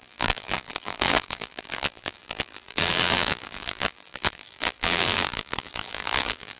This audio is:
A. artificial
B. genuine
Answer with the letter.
A